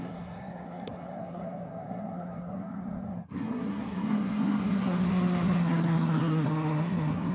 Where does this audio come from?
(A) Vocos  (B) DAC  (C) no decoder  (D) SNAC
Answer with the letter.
D